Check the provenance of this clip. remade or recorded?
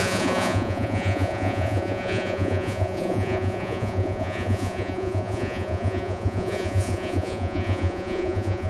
remade